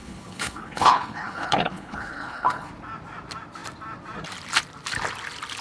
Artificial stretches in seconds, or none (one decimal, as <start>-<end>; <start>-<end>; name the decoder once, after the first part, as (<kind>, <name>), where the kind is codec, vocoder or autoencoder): 0.0-2.7 (codec, HILCodec)